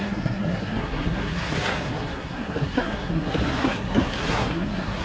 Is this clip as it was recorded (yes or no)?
no